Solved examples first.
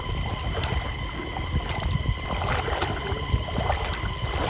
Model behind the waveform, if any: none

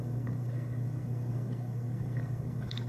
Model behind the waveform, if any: codec, SNAC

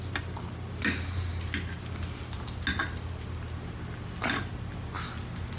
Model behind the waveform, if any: none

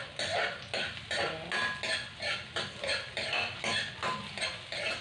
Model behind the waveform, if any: none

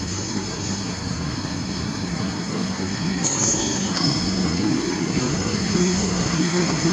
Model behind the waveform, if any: codec, SNAC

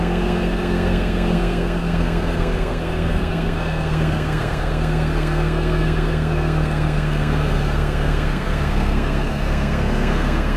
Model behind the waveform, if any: codec, SNAC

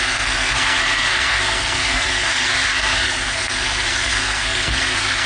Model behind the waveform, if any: codec, SNAC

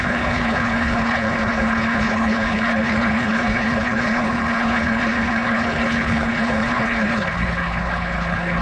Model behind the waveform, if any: codec, HILCodec